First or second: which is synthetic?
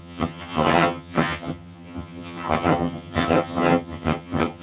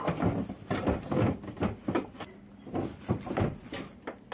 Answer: first